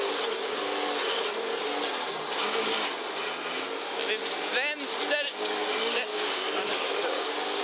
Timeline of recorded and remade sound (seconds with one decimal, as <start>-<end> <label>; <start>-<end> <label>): 0.0-5.3 recorded; 5.3-7.6 remade